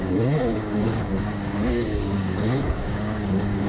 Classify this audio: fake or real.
fake